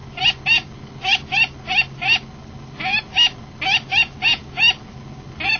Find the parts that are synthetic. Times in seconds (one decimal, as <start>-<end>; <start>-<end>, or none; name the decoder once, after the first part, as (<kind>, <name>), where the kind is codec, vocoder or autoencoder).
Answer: none